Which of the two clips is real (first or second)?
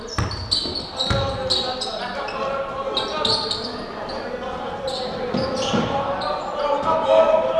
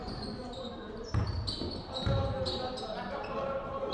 first